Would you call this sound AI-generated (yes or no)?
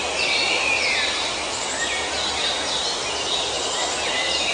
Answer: no